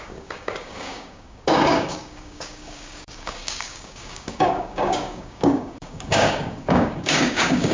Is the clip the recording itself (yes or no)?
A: no